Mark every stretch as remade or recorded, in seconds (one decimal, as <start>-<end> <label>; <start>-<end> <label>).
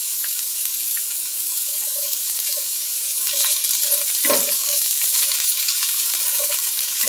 0.0-3.6 remade; 3.6-4.5 recorded; 4.5-7.1 remade